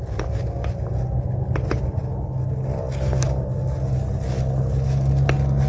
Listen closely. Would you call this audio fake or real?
real